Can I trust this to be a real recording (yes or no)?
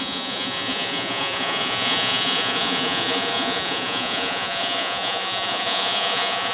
no